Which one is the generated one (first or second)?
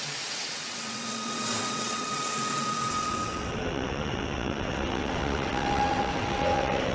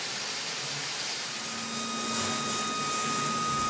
first